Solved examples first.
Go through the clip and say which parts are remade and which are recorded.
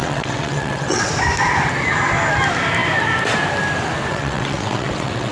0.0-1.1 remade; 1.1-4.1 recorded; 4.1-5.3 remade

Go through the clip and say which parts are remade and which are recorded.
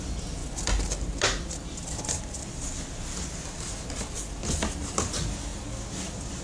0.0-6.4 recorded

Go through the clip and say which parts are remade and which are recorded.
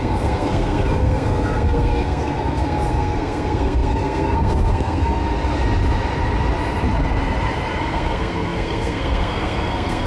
0.0-5.2 remade; 5.2-7.8 recorded; 7.8-10.1 remade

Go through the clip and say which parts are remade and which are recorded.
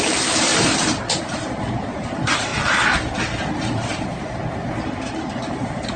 0.0-0.5 remade; 0.5-1.2 recorded; 1.2-2.5 remade; 2.5-3.5 recorded; 3.5-6.0 remade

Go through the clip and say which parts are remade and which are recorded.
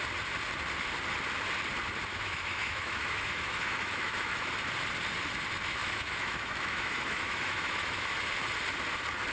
0.0-2.1 recorded; 2.1-4.5 remade; 4.5-5.8 recorded; 5.8-8.2 remade; 8.2-9.3 recorded